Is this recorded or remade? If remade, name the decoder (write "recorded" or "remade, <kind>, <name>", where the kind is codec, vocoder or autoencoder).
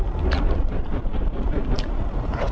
recorded